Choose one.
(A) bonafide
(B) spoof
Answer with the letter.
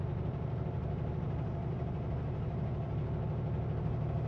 A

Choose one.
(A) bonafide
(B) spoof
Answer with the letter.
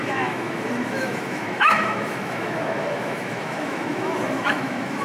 B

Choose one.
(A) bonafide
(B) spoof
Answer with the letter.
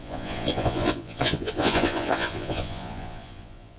B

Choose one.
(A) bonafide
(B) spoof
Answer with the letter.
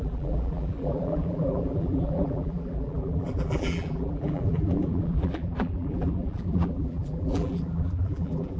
B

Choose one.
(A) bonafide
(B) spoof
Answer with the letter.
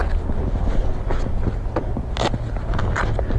A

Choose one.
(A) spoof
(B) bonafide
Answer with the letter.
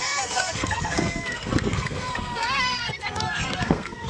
A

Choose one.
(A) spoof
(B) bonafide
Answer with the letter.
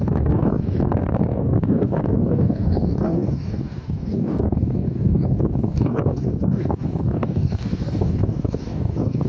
A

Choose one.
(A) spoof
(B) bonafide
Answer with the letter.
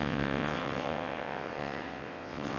A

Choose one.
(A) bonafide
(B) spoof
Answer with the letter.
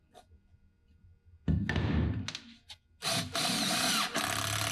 A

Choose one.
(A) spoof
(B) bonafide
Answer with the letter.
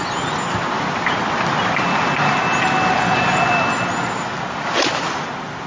B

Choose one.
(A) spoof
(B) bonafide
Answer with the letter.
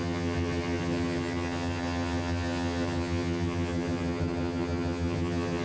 A